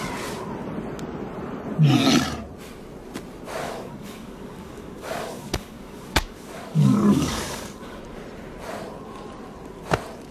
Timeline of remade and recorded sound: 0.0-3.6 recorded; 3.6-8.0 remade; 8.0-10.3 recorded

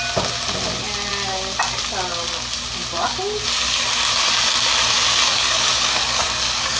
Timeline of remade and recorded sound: 0.0-5.3 recorded; 5.3-6.8 remade

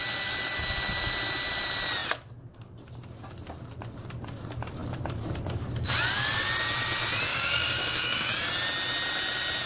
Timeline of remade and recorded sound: 0.0-7.3 recorded; 7.3-8.3 remade; 8.3-9.7 recorded